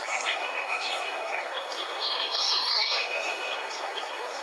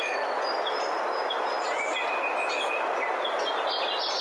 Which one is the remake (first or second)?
first